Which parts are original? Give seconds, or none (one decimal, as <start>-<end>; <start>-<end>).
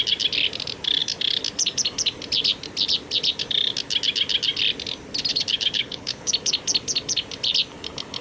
0.0-5.3; 6.3-8.2